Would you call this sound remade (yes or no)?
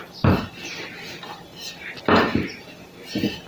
no